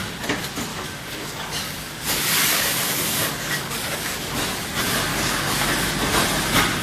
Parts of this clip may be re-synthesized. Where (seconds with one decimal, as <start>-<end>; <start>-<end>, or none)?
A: 0.7-4.3; 5.1-5.7